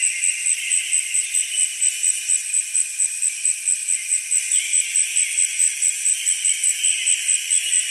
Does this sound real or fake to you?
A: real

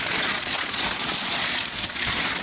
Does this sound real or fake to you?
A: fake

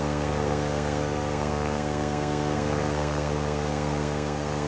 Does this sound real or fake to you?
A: fake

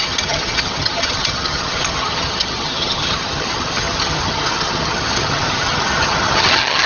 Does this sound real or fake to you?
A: fake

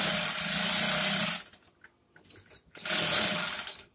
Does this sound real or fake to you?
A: real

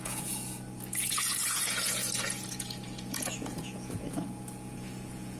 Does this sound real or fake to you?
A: fake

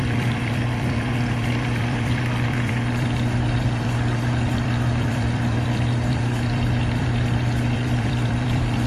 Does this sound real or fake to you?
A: fake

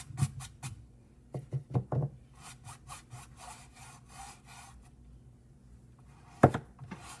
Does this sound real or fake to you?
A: real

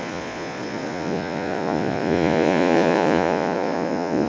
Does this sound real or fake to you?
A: fake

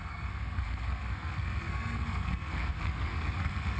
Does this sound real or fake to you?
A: fake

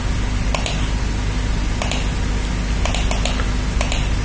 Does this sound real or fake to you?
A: real